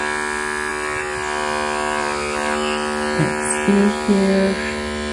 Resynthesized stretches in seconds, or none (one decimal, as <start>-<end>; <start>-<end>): none